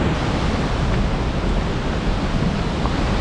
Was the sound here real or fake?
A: real